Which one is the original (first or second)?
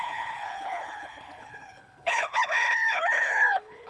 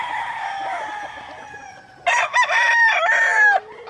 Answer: second